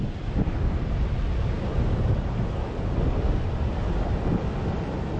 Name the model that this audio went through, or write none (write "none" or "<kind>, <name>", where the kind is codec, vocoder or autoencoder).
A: none